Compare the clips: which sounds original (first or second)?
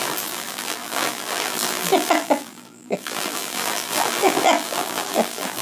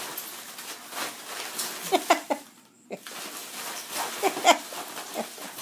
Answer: second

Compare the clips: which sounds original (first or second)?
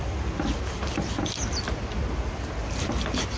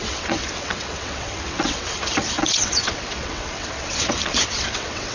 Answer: first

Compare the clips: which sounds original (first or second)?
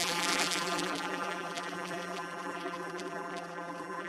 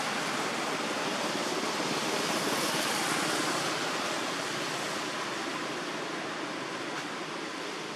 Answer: second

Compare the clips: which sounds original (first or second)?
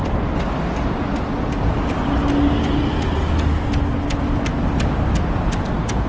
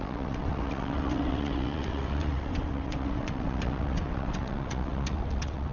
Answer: first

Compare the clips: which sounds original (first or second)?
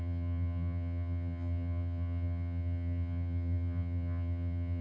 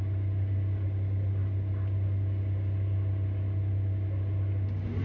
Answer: second